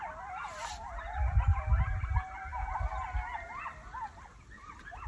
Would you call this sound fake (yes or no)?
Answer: no